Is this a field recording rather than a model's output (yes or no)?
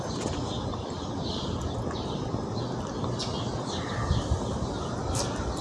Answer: yes